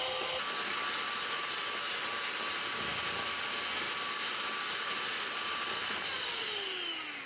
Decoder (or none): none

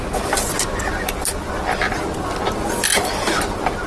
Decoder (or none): none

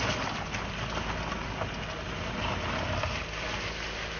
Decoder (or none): none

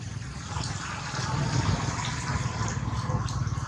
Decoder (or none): none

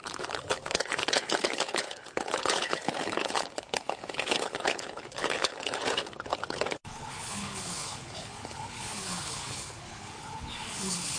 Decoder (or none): codec, HILCodec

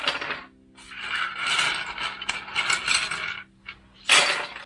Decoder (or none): none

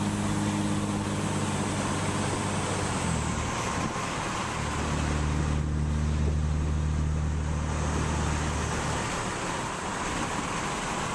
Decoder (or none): none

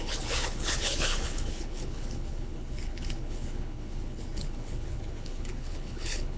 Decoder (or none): codec, HILCodec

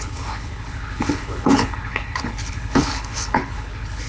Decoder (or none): codec, HILCodec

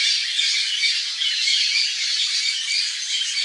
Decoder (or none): none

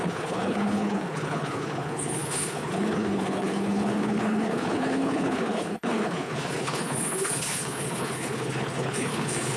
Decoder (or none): codec, HILCodec